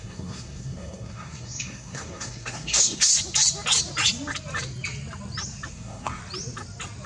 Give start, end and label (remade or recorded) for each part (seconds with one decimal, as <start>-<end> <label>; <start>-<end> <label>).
0.0-3.1 remade; 3.1-5.7 recorded; 5.7-6.2 remade; 6.2-7.1 recorded